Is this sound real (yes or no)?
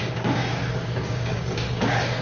no